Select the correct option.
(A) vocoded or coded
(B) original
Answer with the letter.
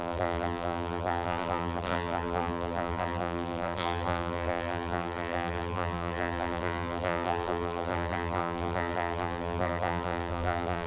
A